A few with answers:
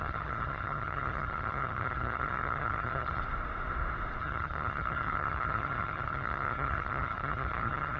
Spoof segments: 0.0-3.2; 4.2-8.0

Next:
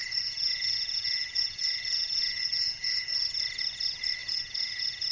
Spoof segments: 0.0-3.1; 4.2-5.1

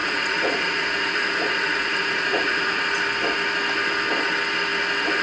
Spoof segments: 0.0-2.8

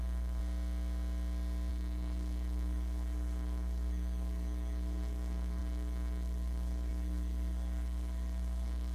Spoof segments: 0.0-0.4; 1.7-8.9

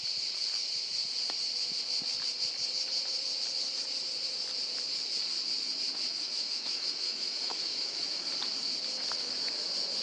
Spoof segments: 6.1-8.3

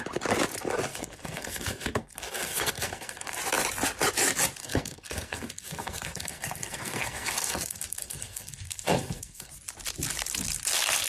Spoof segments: 0.9-3.4; 4.6-9.5

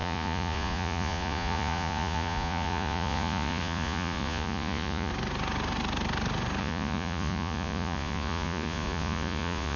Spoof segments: 0.0-5.1; 6.6-9.8